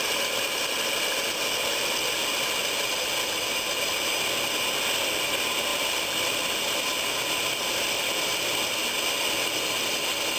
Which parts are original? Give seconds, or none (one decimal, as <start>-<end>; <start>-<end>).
0.0-2.2; 3.9-5.7; 6.5-10.4

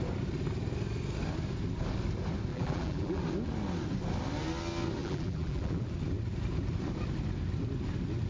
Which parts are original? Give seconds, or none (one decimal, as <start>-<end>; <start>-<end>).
0.0-2.5; 3.2-5.0; 5.9-8.3